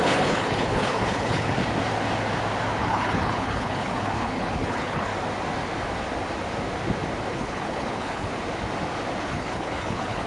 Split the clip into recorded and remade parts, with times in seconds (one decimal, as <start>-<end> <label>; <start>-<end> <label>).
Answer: 0.0-1.6 remade; 1.6-2.8 recorded; 2.8-5.1 remade; 5.1-7.3 recorded; 7.3-8.3 remade; 8.3-9.2 recorded; 9.2-10.3 remade